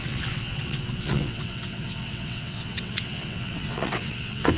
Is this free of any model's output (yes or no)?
no